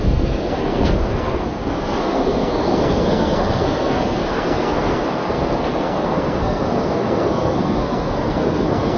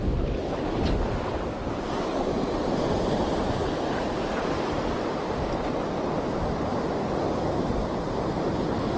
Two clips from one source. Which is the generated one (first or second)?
first